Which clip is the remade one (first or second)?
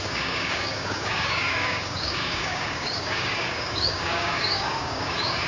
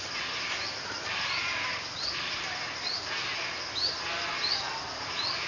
first